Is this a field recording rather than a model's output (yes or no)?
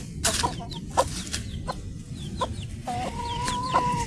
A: yes